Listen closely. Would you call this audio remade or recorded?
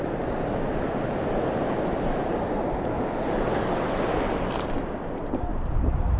recorded